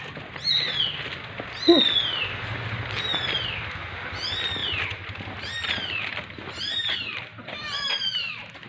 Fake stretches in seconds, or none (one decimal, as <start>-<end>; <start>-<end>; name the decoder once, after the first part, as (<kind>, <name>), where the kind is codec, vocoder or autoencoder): none